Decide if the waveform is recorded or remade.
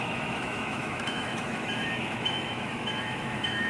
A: remade